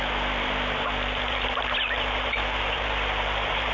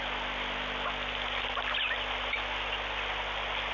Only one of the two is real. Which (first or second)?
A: second